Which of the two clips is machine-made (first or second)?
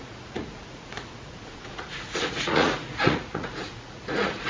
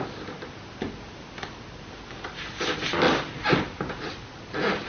first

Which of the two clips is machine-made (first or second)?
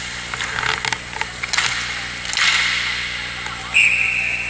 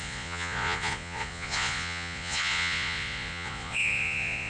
second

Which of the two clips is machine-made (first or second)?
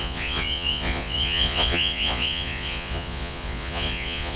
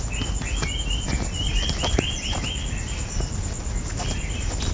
first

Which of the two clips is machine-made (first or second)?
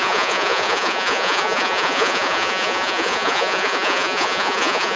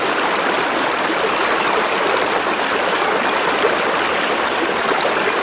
first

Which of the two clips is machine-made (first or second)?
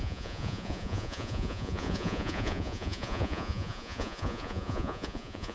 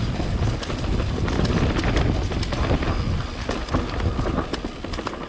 first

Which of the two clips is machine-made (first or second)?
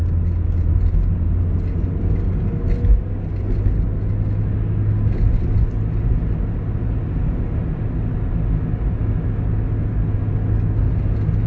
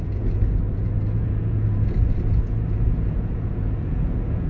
second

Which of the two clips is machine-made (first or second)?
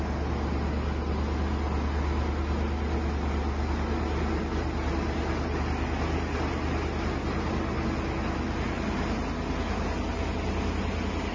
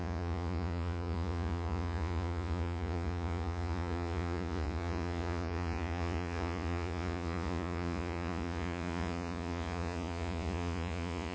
second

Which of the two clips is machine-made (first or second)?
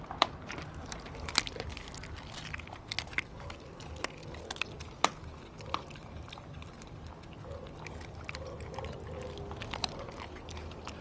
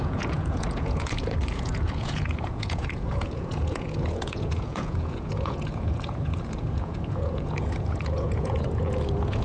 second